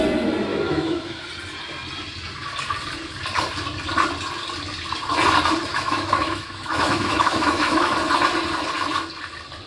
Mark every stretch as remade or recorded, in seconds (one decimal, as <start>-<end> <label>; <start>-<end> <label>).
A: 0.0-0.5 recorded; 0.5-1.3 remade; 1.3-5.7 recorded; 5.7-7.9 remade; 7.9-9.7 recorded